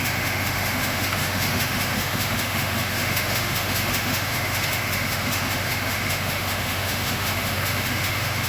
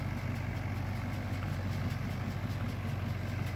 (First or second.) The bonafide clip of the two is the second